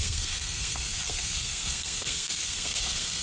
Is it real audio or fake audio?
fake